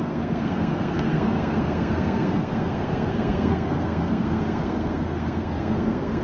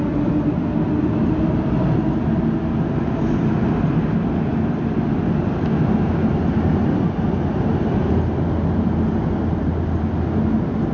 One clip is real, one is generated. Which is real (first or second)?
second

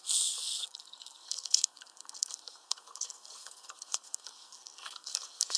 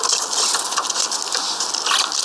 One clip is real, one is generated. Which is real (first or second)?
second